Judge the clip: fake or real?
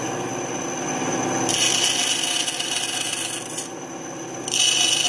real